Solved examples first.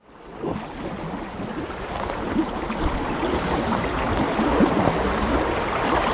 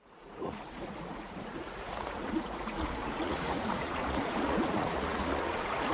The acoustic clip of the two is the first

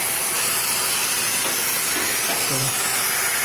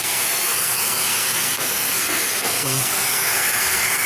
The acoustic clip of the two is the first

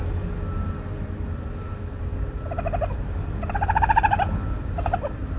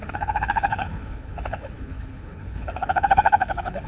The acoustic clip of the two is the first